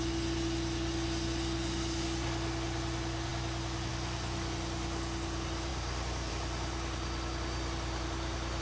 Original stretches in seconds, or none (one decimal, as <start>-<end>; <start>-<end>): 0.0-8.6